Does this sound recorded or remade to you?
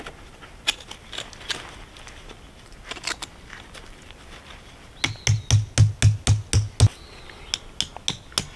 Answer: recorded